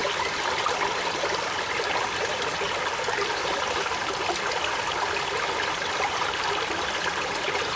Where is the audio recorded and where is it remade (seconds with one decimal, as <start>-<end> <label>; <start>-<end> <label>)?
0.0-7.8 recorded